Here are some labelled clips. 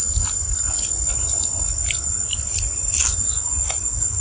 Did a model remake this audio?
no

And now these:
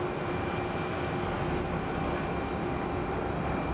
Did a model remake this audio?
no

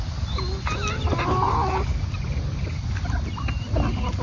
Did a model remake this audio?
no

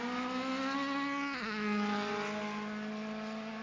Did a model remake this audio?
no